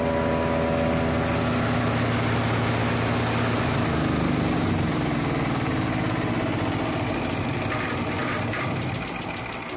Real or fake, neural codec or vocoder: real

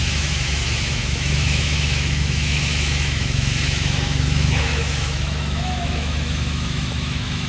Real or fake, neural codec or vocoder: fake, autoencoder, DAC-VAE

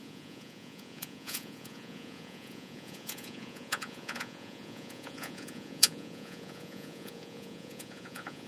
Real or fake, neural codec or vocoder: fake, vocoder, Vocos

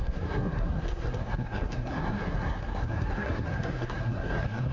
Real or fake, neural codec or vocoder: fake, codec, SNAC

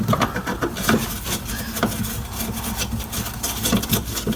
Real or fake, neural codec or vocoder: real